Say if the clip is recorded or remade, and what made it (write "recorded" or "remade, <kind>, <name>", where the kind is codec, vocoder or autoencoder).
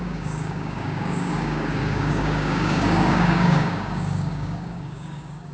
remade, codec, DAC